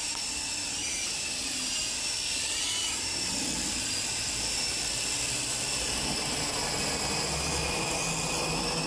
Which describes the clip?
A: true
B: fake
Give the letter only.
A